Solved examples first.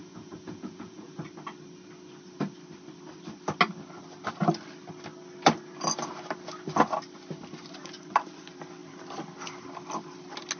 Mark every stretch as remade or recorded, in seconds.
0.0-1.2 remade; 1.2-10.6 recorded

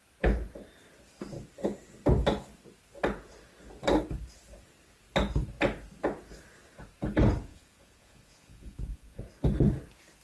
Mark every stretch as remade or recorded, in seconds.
0.0-7.5 recorded; 7.5-9.2 remade; 9.2-10.2 recorded

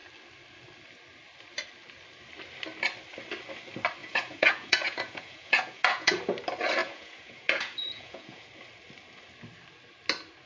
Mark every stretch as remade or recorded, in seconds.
0.0-4.0 recorded; 4.0-6.2 remade; 6.2-6.8 recorded; 6.8-8.5 remade; 8.5-10.5 recorded

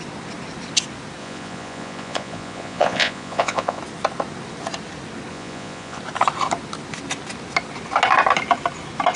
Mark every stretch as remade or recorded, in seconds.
0.0-1.2 recorded; 1.2-3.8 remade; 3.8-5.3 recorded; 5.3-6.0 remade; 6.0-9.2 recorded

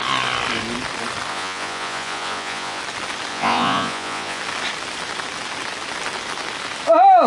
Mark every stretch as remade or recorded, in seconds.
0.0-1.3 recorded; 1.3-2.8 remade; 2.8-3.3 recorded; 3.3-4.4 remade; 4.4-7.3 recorded

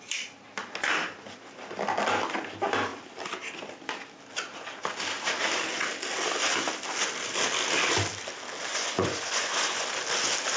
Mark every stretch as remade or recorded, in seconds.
0.0-8.7 recorded; 8.7-9.9 remade; 9.9-10.6 recorded

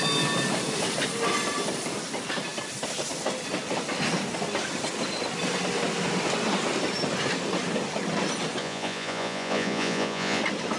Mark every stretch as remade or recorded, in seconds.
0.0-8.6 recorded; 8.6-10.4 remade; 10.4-10.8 recorded

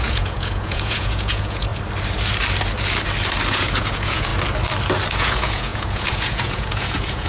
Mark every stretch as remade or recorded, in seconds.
0.0-1.7 remade; 1.7-3.5 recorded; 3.5-4.3 remade; 4.3-5.1 recorded; 5.1-7.3 remade